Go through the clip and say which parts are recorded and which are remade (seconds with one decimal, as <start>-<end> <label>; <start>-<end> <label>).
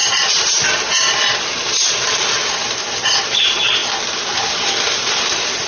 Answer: 0.0-5.7 recorded